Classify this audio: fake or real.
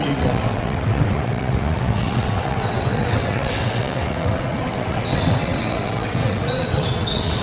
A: fake